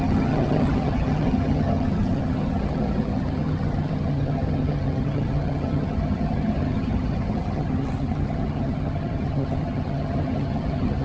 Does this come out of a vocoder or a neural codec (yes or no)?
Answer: yes